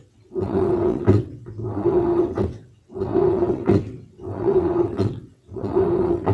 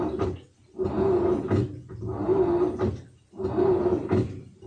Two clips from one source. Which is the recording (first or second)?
second